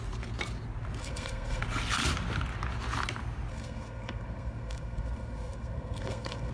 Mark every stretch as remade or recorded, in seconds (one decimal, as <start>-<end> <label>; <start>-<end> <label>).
0.0-1.0 recorded; 1.0-1.6 remade; 1.6-3.5 recorded; 3.5-6.5 remade